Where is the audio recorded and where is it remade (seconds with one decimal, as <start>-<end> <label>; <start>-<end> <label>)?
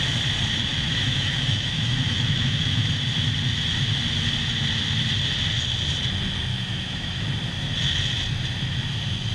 0.0-0.7 recorded; 0.7-2.9 remade; 2.9-6.5 recorded; 6.5-7.2 remade; 7.2-9.3 recorded